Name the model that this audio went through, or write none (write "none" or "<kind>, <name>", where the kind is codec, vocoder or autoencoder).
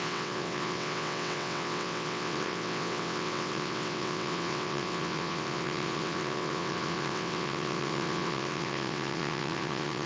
vocoder, WaveNeXt